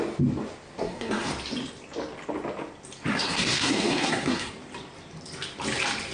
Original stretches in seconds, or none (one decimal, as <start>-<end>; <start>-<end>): 0.0-0.8; 1.3-3.1; 4.5-6.1